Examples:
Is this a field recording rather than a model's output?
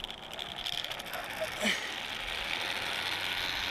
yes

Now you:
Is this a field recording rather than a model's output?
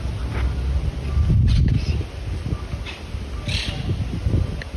yes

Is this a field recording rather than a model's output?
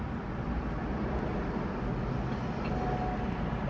yes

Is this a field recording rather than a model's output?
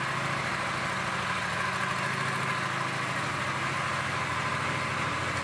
yes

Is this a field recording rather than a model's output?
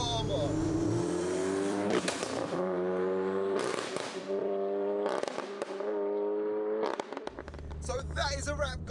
no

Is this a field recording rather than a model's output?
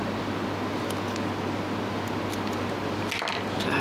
yes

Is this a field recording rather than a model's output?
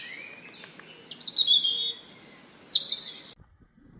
yes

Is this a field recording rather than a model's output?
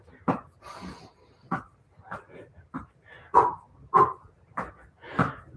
yes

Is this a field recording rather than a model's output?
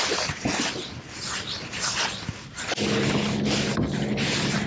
yes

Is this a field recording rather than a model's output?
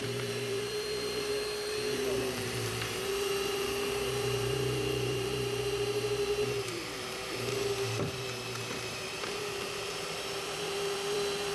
no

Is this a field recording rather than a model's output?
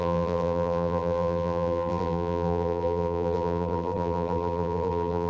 no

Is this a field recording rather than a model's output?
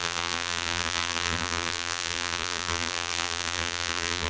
no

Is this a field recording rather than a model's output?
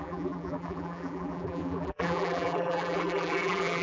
no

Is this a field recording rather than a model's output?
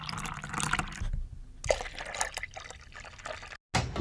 yes